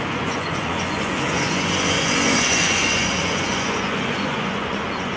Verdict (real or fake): fake